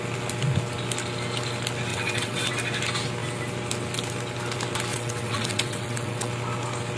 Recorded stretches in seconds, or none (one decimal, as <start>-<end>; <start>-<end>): 0.0-1.9; 2.5-4.9; 6.3-7.0